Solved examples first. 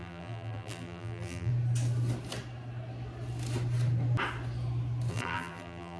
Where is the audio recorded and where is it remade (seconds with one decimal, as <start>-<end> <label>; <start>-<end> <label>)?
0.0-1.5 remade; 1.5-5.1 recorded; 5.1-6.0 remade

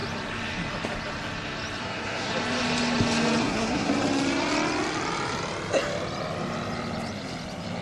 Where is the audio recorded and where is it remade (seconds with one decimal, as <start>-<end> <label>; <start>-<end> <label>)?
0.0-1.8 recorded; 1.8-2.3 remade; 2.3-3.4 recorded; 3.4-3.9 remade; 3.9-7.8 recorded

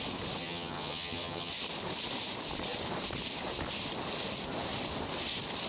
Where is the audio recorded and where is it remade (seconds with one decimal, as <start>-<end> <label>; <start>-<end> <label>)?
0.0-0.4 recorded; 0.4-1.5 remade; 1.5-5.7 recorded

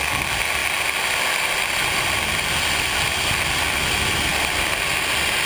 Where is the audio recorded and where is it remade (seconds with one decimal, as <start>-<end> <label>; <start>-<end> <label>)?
0.0-5.5 recorded

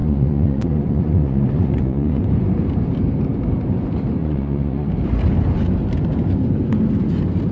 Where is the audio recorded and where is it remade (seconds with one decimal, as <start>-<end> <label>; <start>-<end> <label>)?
0.0-2.3 remade; 2.3-4.2 recorded; 4.2-4.9 remade; 4.9-7.5 recorded

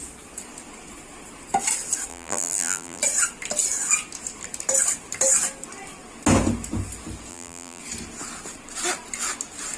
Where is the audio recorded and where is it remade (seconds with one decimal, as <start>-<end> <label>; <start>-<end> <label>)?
0.0-2.1 recorded; 2.1-3.0 remade; 3.0-7.3 recorded; 7.3-7.8 remade; 7.8-9.8 recorded